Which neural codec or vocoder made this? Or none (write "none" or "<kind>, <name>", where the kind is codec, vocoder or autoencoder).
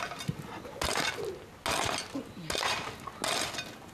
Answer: none